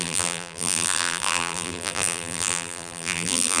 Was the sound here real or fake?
fake